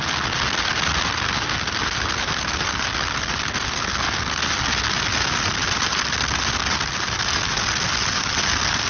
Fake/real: real